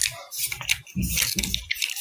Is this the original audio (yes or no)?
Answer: yes